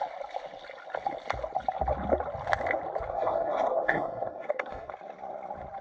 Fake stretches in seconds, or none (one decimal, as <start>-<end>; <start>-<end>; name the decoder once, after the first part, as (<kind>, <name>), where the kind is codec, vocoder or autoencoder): 3.1-4.9 (codec, SNAC)